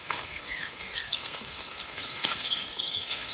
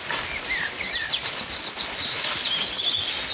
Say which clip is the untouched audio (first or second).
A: second